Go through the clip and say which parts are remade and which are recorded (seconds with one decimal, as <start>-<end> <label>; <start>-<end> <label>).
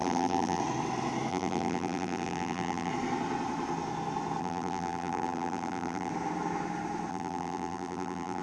0.0-0.6 remade; 0.6-1.3 recorded; 1.3-2.9 remade; 2.9-4.4 recorded; 4.4-6.1 remade; 6.1-7.1 recorded; 7.1-8.4 remade